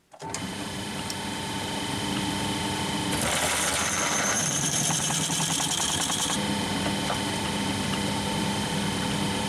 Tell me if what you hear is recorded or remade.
remade